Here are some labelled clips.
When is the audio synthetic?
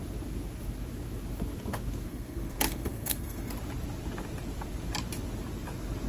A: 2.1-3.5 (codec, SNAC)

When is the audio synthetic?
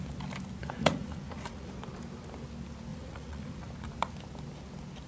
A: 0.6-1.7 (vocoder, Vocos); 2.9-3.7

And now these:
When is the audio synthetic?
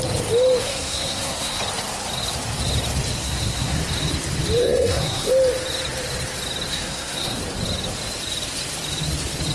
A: 0.6-1.6 (codec, SNAC); 3.2-3.8; 4.6-5.3; 6.7-7.4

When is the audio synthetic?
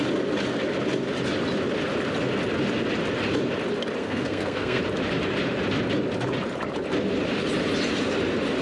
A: 4.0-4.8 (codec, SNAC)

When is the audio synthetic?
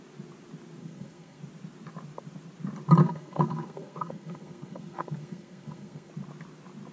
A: 0.8-1.4 (codec, SNAC); 3.0-6.1